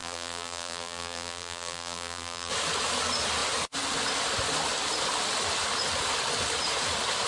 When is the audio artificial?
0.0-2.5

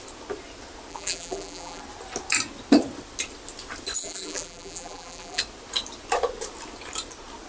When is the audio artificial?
0.9-1.8; 4.0-5.4

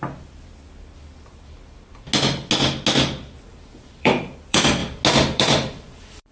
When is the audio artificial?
3.5-4.8; 5.4-6.3

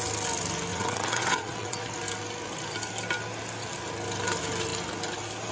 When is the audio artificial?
0.7-1.9

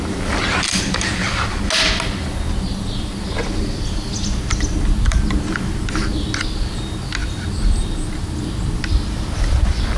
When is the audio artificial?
none